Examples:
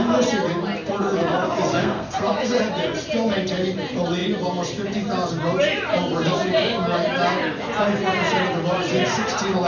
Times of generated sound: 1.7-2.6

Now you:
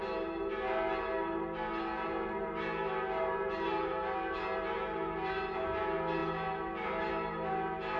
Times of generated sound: none

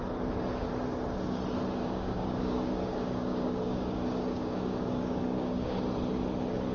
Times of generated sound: 1.8-5.8

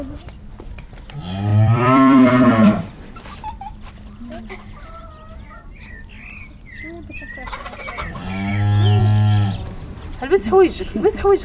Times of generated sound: 1.5-4.9